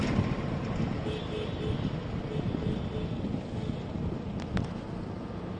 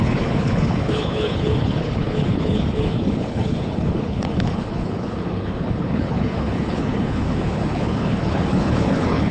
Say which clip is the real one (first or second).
first